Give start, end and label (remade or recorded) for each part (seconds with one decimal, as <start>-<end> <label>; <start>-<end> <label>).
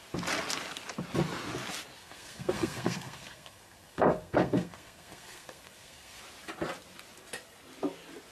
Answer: 0.0-2.0 recorded; 2.0-6.2 remade; 6.2-8.3 recorded